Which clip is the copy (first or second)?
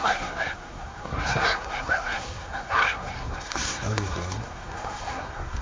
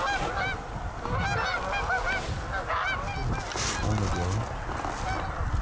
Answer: first